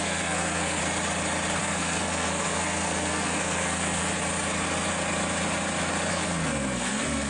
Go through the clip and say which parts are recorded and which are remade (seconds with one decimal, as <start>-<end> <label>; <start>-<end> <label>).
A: 0.0-0.8 remade; 0.8-1.6 recorded; 1.6-4.0 remade; 4.0-6.1 recorded; 6.1-7.3 remade